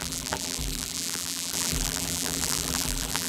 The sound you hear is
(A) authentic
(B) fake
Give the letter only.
B